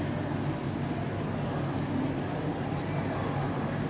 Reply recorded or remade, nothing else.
recorded